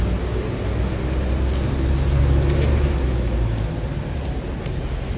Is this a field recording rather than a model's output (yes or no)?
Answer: yes